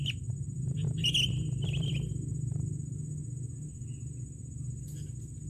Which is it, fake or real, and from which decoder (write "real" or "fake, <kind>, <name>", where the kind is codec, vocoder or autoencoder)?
real